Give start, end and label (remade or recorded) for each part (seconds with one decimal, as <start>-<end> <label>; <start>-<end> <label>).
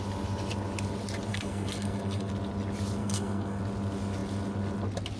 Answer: 0.0-1.3 recorded; 1.3-2.3 remade; 2.3-3.0 recorded; 3.0-3.6 remade; 3.6-5.2 recorded